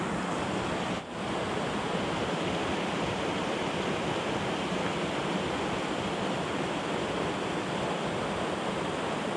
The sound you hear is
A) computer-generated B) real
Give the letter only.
B